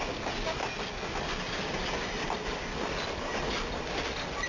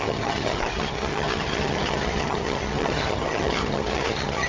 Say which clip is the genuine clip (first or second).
first